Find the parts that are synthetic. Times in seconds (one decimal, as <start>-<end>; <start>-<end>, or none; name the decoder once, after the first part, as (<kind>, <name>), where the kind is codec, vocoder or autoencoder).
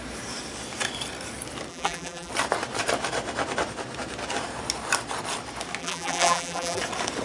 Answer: 1.7-2.3 (vocoder, BigVGAN v2); 5.8-6.8